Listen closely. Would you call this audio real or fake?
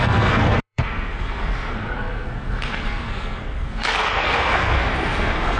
fake